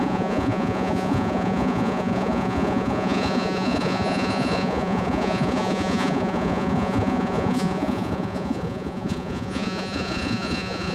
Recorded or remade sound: remade